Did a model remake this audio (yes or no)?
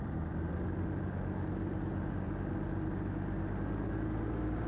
no